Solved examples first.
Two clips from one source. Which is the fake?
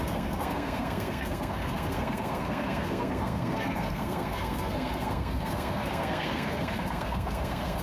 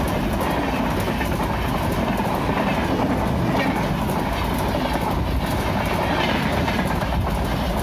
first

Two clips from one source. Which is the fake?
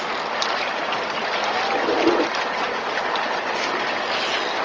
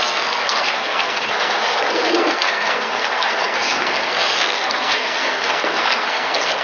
second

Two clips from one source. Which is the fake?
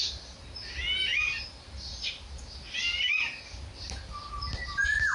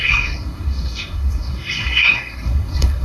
second